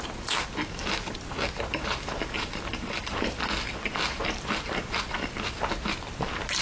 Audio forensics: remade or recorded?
recorded